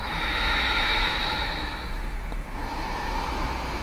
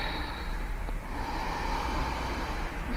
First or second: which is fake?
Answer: first